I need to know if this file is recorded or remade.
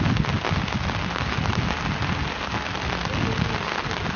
recorded